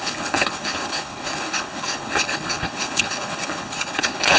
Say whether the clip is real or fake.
fake